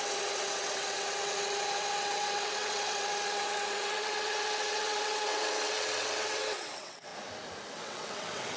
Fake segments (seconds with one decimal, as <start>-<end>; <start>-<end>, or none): 0.0-7.1; 7.7-8.6